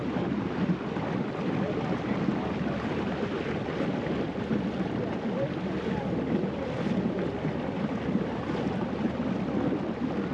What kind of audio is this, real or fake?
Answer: real